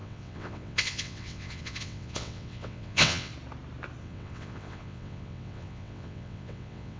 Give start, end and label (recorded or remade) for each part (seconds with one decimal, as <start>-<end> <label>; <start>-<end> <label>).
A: 0.0-3.3 remade; 3.3-4.0 recorded; 4.0-7.0 remade

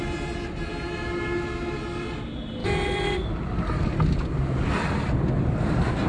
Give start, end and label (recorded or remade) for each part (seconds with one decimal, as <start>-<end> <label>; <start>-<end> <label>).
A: 0.0-6.1 recorded

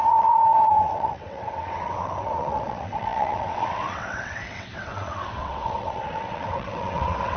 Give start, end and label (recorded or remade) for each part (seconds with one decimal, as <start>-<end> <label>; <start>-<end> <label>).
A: 0.0-7.4 remade

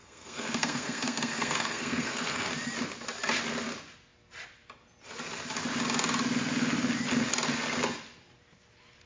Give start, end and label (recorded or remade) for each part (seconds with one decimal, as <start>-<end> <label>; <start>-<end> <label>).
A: 0.0-2.5 remade; 2.5-9.1 recorded